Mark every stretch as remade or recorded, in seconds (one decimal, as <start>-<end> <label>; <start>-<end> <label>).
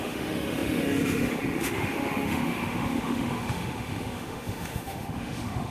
0.0-5.7 remade